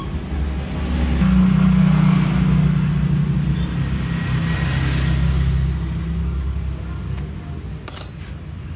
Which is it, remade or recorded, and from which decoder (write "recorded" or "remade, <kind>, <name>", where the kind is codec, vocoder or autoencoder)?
recorded